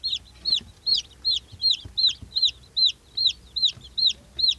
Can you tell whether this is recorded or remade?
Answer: recorded